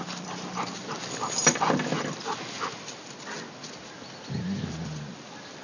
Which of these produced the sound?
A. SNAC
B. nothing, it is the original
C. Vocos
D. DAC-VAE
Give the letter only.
B